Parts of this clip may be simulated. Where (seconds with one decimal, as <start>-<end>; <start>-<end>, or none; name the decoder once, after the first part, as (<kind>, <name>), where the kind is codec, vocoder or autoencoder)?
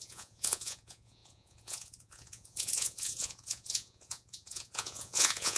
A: 0.0-5.6 (vocoder, Vocos)